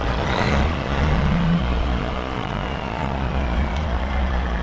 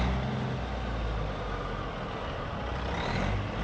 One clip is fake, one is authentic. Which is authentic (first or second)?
second